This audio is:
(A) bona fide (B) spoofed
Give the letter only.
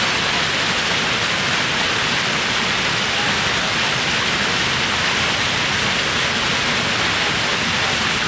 A